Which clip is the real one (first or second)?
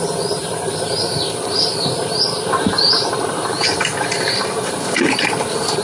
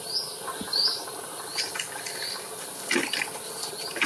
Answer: second